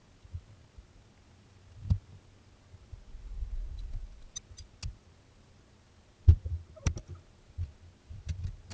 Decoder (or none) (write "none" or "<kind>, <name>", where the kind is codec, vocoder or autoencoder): none